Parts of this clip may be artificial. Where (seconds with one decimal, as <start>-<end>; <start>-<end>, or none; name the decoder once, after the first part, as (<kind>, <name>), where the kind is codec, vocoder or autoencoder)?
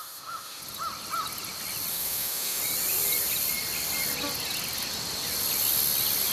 0.0-0.6 (autoencoder, DAC-VAE); 1.9-2.6